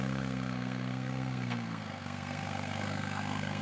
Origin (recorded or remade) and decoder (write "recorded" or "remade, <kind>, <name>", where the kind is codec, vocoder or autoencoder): remade, codec, SNAC